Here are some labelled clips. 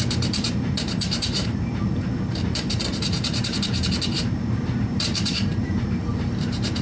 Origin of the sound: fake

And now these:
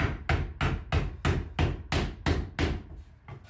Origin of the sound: real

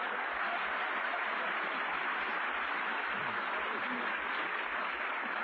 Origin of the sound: real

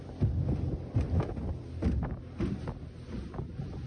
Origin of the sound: real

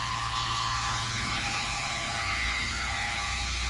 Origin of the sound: fake